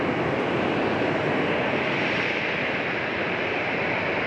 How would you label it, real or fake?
real